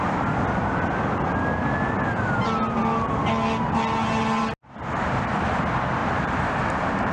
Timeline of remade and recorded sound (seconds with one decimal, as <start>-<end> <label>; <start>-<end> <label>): 0.0-6.0 recorded; 6.0-7.1 remade

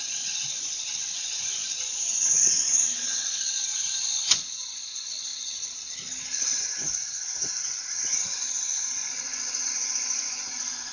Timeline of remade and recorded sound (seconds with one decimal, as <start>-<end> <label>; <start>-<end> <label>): 0.0-5.3 remade; 5.3-6.6 recorded; 6.6-10.9 remade

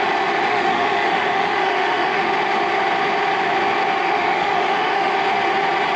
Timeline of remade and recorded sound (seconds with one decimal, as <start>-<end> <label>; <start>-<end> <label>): 0.0-0.5 recorded; 0.5-2.3 remade; 2.3-4.0 recorded; 4.0-5.1 remade; 5.1-6.0 recorded

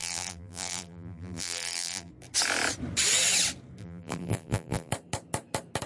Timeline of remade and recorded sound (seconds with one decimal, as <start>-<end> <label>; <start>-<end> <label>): 0.0-2.1 remade; 2.1-3.8 recorded; 3.8-4.9 remade; 4.9-5.9 recorded